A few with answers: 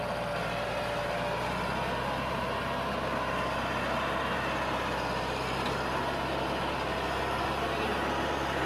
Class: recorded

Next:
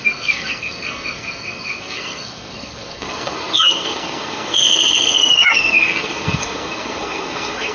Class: remade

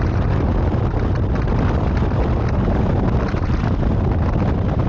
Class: recorded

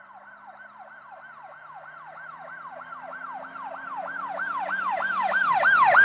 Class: recorded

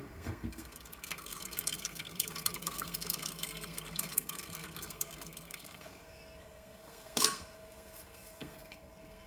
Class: remade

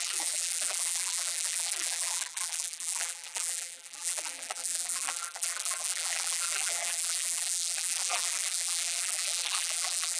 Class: remade